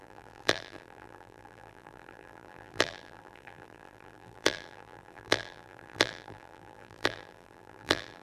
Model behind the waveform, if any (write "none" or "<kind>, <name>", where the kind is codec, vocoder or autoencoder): vocoder, BigVGAN v2